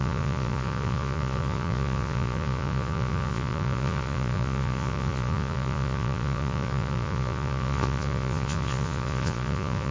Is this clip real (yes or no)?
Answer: no